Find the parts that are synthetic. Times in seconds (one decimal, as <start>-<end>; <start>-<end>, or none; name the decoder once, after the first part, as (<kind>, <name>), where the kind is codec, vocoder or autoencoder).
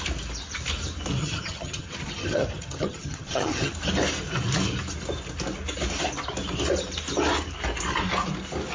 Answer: 1.2-3.7 (vocoder, HiFi-GAN)